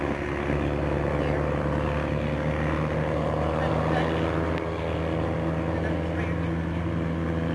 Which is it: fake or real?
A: real